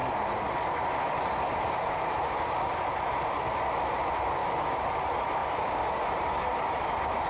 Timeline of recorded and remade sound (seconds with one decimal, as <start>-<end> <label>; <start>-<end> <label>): 0.0-4.4 recorded; 4.4-5.0 remade; 5.0-7.3 recorded